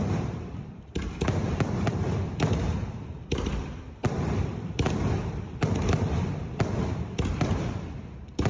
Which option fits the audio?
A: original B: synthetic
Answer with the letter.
B